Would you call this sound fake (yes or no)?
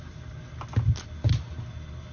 no